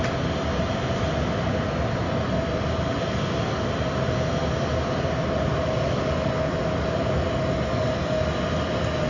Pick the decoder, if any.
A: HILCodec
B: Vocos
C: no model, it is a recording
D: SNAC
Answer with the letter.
C